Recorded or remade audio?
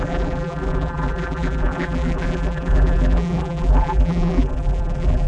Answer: remade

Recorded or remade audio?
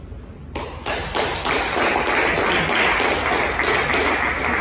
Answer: recorded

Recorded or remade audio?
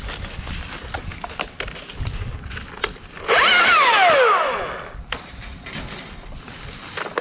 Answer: recorded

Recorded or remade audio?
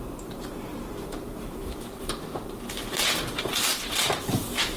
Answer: remade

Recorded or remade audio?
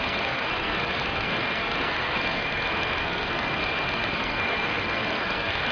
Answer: remade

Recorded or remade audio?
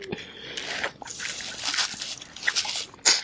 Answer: recorded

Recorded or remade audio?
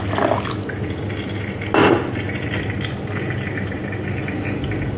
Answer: recorded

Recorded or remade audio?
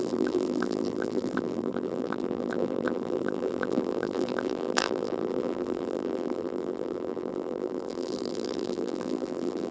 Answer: remade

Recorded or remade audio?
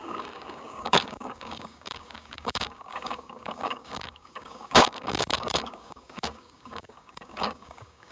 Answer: remade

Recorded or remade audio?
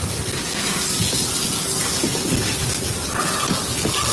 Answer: recorded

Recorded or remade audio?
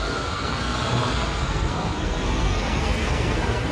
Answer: remade